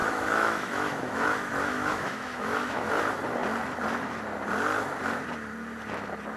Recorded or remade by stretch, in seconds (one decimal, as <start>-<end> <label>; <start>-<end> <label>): 0.0-2.9 remade; 2.9-6.4 recorded